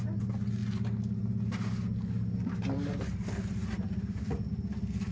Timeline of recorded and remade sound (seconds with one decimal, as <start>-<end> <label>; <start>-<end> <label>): 0.0-5.1 recorded